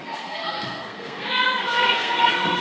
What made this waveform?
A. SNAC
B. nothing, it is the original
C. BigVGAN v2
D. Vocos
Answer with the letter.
A